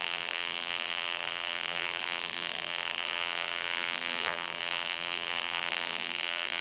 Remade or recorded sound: remade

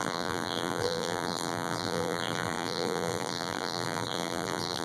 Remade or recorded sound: remade